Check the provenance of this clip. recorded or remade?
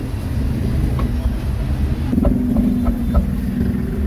recorded